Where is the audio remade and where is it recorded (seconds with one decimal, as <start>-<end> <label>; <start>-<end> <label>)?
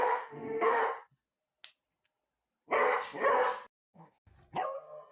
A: 0.0-0.8 remade; 0.8-3.8 recorded; 3.8-4.3 remade; 4.3-5.1 recorded